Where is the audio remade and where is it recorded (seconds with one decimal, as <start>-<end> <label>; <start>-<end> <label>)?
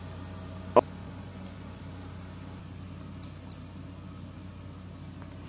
0.0-1.0 recorded; 1.0-1.8 remade; 1.8-5.5 recorded